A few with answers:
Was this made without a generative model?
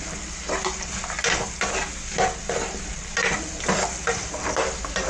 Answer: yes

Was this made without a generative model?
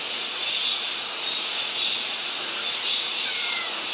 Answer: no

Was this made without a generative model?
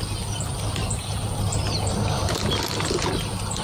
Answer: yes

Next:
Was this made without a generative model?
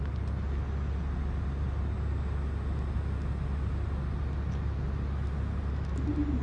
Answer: yes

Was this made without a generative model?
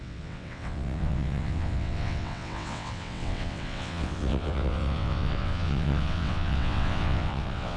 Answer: no